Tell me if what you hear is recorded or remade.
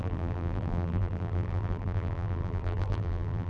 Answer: remade